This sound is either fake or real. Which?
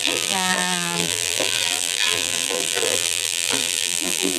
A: fake